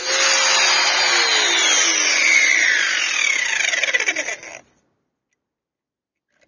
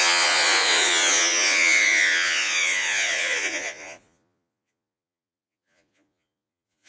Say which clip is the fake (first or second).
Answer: second